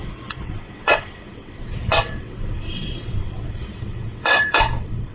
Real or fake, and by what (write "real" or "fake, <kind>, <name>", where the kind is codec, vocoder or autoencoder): fake, vocoder, WaveNeXt